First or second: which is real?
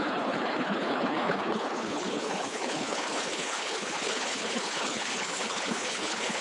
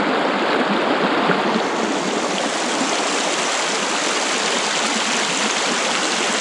second